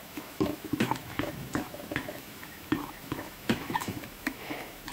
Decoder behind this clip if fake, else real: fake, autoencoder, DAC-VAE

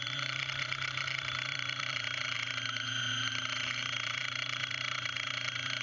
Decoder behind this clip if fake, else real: fake, vocoder, BigVGAN v2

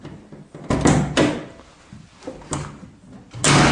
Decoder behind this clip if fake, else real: real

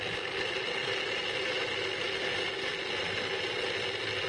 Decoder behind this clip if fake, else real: real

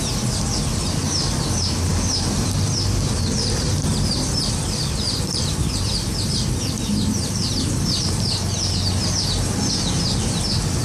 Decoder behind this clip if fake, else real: fake, vocoder, BigVGAN v2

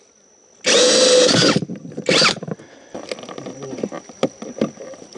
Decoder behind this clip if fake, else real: real